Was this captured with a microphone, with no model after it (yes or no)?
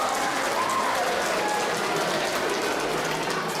yes